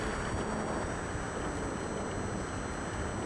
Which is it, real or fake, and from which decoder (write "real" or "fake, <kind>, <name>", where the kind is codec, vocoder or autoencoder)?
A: real